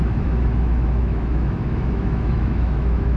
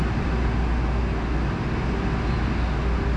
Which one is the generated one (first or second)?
first